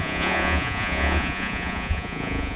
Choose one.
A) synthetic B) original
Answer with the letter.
A